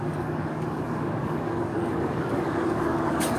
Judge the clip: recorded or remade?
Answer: remade